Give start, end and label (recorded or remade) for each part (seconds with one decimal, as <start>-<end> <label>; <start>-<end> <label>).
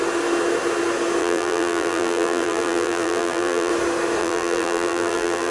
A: 0.0-1.2 recorded; 1.2-3.7 remade; 3.7-4.2 recorded; 4.2-5.5 remade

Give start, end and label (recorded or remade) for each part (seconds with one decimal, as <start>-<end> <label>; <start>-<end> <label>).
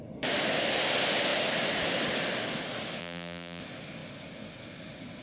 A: 0.0-3.0 recorded; 3.0-3.6 remade; 3.6-5.2 recorded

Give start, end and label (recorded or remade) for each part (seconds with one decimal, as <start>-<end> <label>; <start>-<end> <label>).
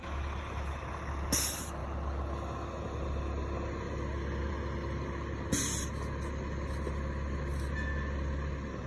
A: 0.0-8.9 recorded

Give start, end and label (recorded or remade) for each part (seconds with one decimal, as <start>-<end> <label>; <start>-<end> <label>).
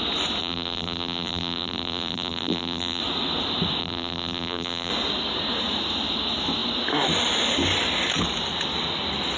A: 0.0-0.4 recorded; 0.4-3.0 remade; 3.0-3.8 recorded; 3.8-4.9 remade; 4.9-9.4 recorded